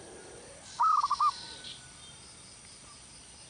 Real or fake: real